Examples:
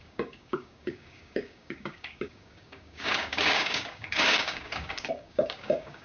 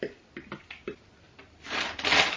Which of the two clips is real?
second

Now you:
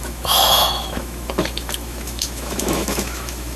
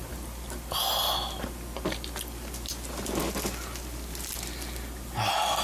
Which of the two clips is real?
second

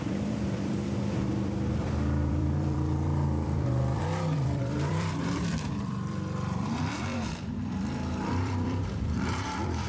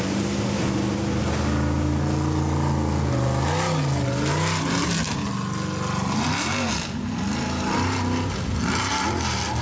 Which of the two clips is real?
second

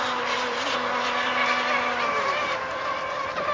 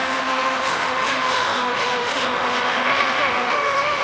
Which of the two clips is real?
first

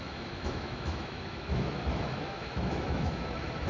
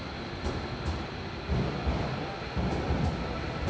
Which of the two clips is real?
second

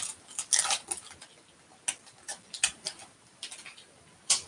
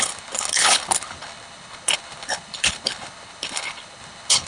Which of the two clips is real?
first